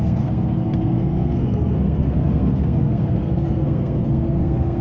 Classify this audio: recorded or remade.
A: remade